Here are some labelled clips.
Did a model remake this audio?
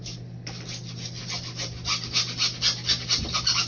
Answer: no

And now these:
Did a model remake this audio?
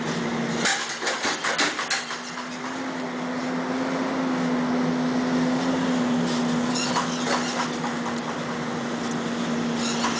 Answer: no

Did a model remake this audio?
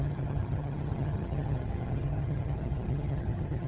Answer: yes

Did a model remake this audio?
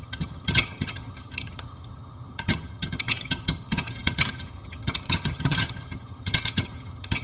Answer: yes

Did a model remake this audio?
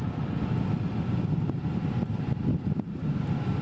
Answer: no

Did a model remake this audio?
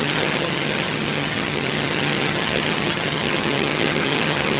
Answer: yes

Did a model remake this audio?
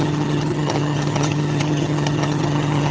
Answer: yes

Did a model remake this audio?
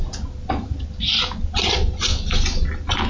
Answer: no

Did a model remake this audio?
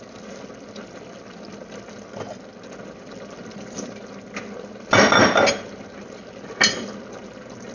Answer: no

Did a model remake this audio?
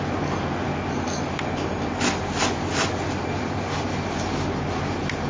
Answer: no